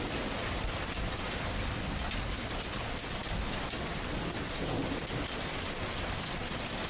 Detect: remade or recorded recorded